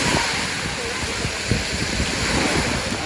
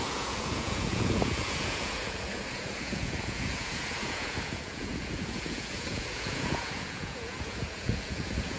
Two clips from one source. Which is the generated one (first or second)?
second